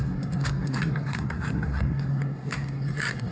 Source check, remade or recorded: remade